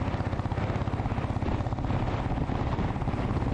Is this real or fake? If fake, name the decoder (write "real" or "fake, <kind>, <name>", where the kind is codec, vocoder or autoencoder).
real